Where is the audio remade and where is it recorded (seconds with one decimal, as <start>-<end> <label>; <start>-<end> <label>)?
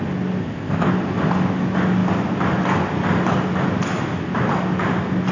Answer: 0.0-0.4 recorded; 0.4-0.9 remade; 0.9-5.3 recorded